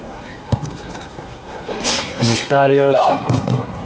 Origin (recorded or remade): remade